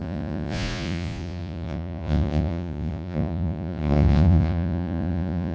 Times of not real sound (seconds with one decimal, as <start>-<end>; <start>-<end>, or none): 0.0-5.5